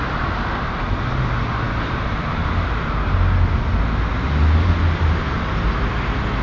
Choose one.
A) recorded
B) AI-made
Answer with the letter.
A